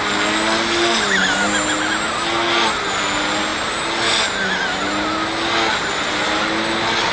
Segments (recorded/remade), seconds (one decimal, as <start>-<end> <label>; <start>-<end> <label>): 0.0-7.1 recorded